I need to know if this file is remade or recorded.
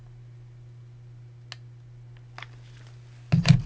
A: recorded